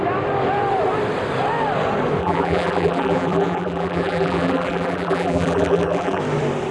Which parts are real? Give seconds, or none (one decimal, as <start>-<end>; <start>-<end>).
0.0-2.2; 6.2-6.7